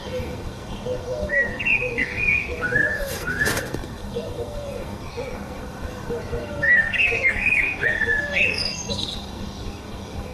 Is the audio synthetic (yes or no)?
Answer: yes